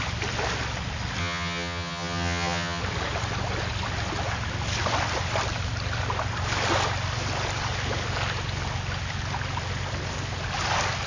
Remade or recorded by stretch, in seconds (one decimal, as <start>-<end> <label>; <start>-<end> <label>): 0.0-1.2 recorded; 1.2-2.8 remade; 2.8-11.1 recorded